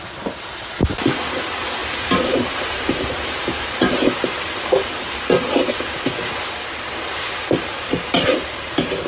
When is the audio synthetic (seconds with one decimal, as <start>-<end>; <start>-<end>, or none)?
1.8-3.9